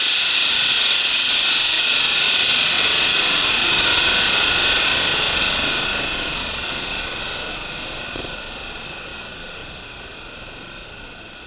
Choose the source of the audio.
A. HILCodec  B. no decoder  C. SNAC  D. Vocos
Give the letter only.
D